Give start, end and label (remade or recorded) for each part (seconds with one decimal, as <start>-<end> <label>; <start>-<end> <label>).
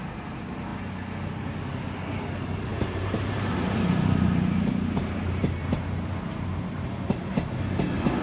0.0-2.7 recorded; 2.7-7.6 remade; 7.6-8.2 recorded